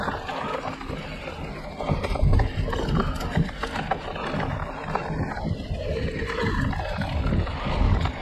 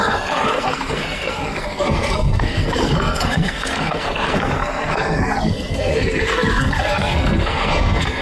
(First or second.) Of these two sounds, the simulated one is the second